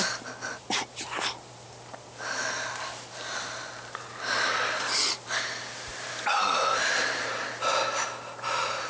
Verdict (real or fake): real